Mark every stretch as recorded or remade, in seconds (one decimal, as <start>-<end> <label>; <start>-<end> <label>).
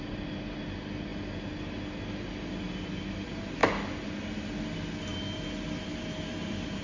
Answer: 0.0-6.8 recorded